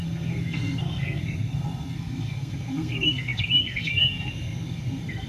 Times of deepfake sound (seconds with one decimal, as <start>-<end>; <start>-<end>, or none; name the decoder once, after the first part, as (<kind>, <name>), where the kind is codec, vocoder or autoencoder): 0.0-5.3 (codec, SNAC)